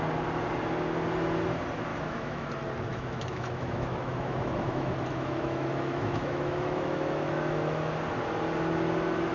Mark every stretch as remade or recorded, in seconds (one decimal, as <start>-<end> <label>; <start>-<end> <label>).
0.0-1.9 recorded; 1.9-2.5 remade; 2.5-2.9 recorded; 2.9-7.9 remade; 7.9-9.3 recorded

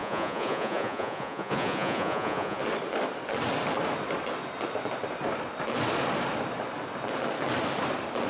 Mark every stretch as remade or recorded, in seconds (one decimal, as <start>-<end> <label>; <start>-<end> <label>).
0.0-2.6 remade; 2.6-8.3 recorded

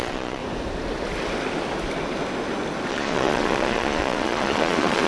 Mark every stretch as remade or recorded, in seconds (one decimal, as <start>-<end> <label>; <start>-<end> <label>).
0.0-0.4 remade; 0.4-2.9 recorded; 2.9-5.1 remade

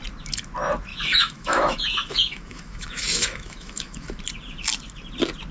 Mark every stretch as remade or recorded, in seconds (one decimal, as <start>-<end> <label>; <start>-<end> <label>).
0.0-0.9 recorded; 0.9-4.2 remade; 4.2-5.5 recorded

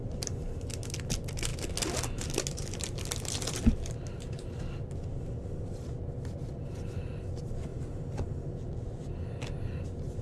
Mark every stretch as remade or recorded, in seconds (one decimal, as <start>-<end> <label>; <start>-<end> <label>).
0.0-10.2 recorded

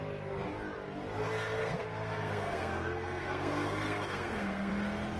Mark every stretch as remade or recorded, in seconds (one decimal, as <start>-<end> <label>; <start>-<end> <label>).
0.0-1.6 recorded; 1.6-4.7 remade; 4.7-5.2 recorded